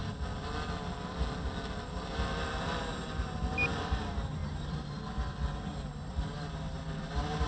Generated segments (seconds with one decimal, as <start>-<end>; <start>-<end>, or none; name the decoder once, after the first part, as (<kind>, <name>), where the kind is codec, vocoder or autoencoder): none